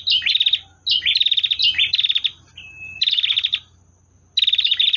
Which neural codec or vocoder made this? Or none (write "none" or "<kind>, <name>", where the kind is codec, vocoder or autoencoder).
none